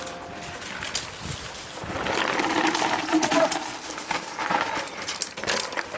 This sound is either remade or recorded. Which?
recorded